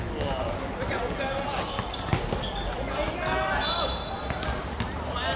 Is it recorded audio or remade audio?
recorded